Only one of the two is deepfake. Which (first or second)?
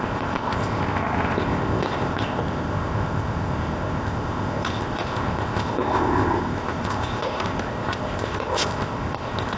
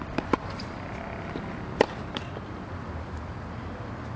first